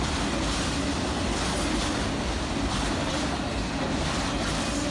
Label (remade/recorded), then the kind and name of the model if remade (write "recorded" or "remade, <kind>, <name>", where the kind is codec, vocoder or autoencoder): recorded